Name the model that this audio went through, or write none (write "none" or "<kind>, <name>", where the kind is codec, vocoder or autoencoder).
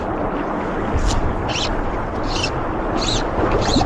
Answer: none